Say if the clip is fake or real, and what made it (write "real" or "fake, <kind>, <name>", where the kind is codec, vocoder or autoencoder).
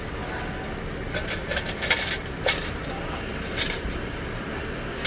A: real